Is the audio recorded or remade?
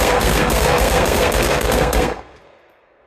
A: remade